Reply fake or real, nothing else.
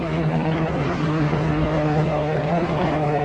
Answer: fake